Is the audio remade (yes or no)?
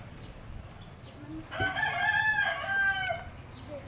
no